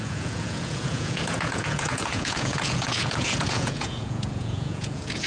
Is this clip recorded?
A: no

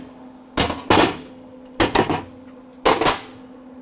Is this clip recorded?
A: yes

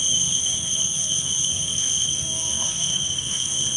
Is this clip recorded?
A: no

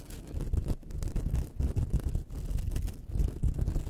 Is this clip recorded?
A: yes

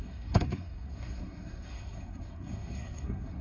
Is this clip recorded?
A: no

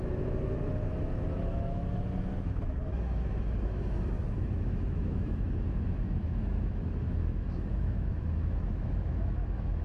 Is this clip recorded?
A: no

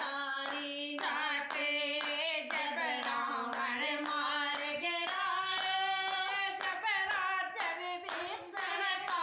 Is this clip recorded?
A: yes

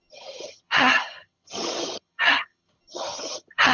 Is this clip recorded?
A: no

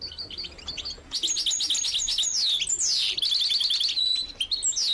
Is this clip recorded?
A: yes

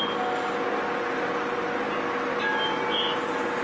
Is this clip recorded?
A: yes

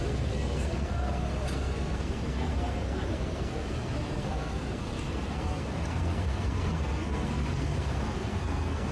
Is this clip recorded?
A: no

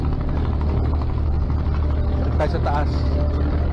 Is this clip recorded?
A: yes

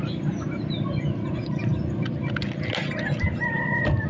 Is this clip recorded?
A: yes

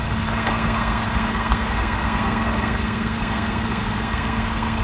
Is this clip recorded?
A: no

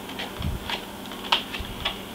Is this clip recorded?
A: yes